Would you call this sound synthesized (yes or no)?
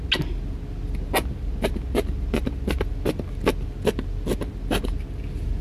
no